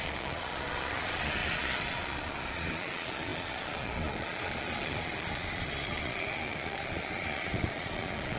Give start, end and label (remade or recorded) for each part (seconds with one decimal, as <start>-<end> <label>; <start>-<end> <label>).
0.0-8.4 remade